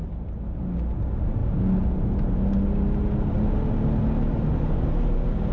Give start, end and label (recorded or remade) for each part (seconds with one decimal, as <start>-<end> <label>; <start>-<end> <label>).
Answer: 0.0-5.5 recorded